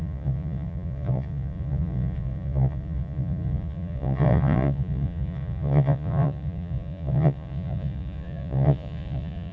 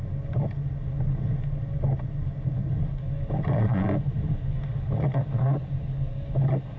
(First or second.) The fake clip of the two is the first